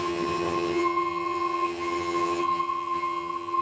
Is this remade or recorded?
remade